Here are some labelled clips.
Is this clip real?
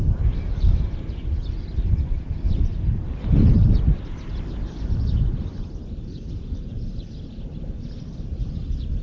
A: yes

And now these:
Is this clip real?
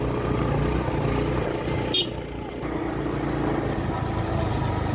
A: yes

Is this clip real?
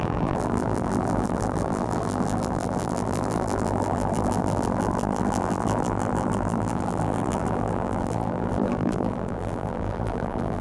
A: no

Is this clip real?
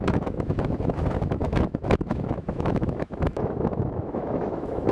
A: no